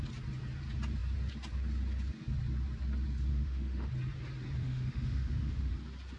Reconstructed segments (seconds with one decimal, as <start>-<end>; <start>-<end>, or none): 3.3-3.9; 4.6-5.7

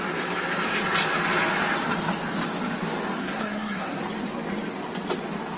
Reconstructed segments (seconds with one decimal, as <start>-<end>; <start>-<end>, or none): 3.2-4.0

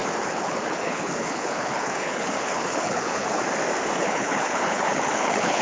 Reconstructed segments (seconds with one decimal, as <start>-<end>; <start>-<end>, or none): 0.0-3.4; 4.0-5.6

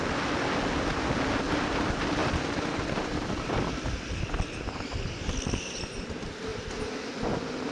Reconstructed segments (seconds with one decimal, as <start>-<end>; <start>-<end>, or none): 2.2-3.3; 6.5-7.3

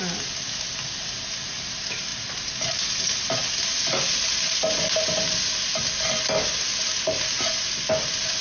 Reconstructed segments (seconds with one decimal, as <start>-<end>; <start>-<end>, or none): none

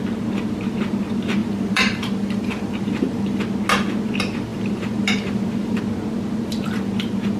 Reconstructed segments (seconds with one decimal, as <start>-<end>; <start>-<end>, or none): 1.4-3.4; 4.5-5.8

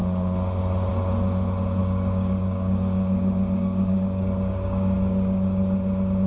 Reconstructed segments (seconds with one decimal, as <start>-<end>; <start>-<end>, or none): 1.8-5.6